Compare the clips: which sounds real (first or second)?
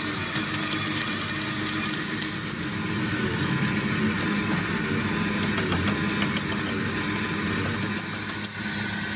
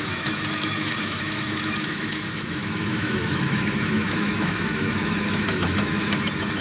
first